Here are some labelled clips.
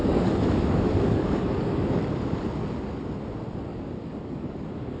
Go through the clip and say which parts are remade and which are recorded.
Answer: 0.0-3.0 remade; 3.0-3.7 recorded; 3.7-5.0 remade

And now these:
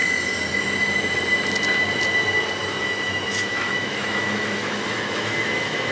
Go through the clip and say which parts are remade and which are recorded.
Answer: 0.0-2.6 recorded; 2.6-5.9 remade

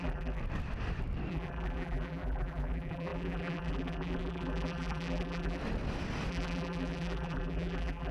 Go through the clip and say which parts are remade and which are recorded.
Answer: 0.0-0.4 remade; 0.4-1.3 recorded; 1.3-5.6 remade; 5.6-6.3 recorded; 6.3-8.1 remade

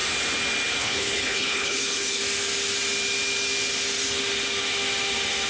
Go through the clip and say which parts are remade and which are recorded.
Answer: 0.0-0.8 recorded; 0.8-2.2 remade; 2.2-5.5 recorded